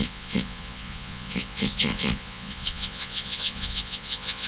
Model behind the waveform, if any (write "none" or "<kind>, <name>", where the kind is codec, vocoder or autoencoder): vocoder, Vocos